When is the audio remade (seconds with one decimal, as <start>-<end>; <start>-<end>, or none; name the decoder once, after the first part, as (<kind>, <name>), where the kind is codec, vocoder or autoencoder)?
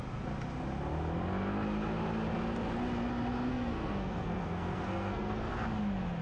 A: 3.5-5.5 (codec, SNAC)